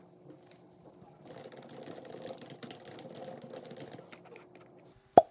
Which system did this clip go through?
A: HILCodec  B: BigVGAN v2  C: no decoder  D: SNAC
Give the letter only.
C